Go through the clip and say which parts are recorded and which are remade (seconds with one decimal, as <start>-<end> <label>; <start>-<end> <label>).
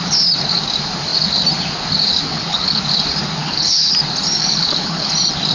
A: 0.0-2.3 recorded; 2.3-2.8 remade; 2.8-3.4 recorded; 3.4-3.9 remade; 3.9-4.4 recorded; 4.4-5.1 remade; 5.1-5.5 recorded